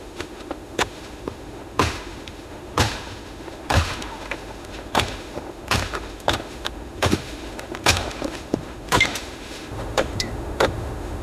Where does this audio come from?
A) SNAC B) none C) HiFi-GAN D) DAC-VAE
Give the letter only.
D